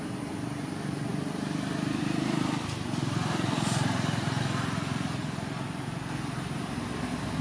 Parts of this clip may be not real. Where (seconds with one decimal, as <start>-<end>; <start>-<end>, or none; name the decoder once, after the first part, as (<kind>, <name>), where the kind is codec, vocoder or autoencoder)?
1.1-4.4 (vocoder, BigVGAN v2)